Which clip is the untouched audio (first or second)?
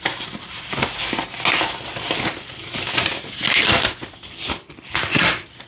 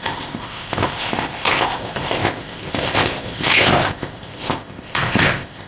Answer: first